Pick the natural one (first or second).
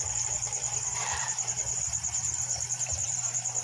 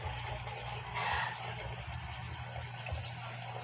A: second